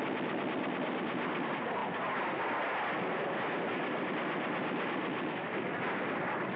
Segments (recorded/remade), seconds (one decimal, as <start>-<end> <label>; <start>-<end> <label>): 0.0-6.6 recorded